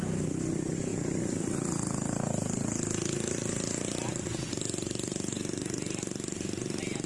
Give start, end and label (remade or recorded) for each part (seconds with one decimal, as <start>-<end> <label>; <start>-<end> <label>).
0.0-7.1 recorded